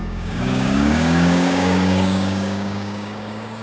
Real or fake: fake